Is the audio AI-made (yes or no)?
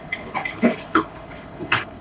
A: yes